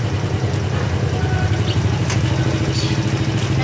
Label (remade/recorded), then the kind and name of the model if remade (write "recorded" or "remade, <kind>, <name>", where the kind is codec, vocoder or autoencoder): recorded